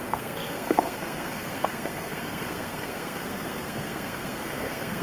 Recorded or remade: remade